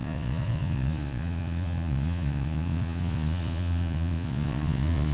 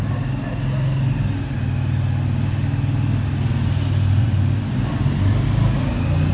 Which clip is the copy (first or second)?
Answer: first